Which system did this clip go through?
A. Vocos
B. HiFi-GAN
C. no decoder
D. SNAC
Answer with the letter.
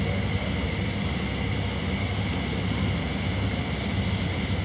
C